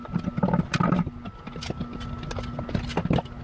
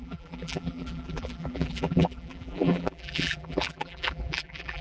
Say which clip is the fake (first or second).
second